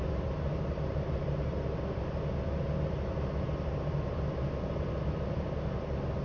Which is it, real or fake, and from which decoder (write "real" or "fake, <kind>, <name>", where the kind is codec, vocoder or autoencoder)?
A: real